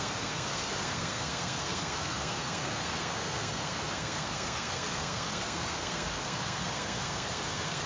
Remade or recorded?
remade